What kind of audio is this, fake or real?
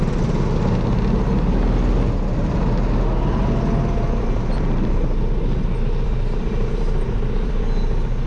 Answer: real